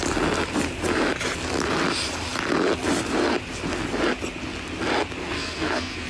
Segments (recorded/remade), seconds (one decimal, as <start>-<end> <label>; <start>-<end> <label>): 0.0-5.2 recorded; 5.2-6.1 remade